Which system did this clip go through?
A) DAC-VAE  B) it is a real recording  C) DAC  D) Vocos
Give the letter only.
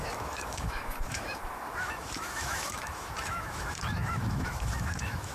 A